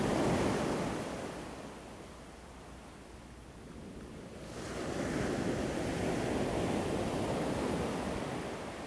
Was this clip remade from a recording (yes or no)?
no